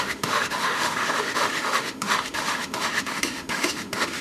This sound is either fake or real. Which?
fake